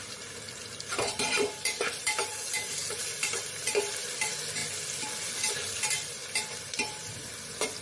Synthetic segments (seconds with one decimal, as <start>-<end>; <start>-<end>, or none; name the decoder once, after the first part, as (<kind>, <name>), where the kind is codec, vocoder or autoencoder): 0.0-4.6 (vocoder, BigVGAN v2); 5.5-7.8